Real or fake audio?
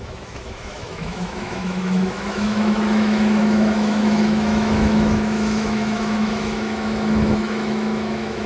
fake